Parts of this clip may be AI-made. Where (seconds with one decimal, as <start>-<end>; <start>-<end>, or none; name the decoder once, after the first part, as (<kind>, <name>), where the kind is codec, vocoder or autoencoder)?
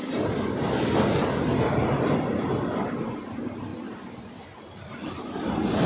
none